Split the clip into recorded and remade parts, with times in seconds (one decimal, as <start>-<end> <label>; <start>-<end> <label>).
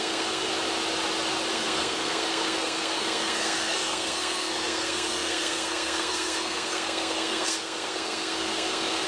0.0-0.5 remade; 0.5-1.5 recorded; 1.5-9.1 remade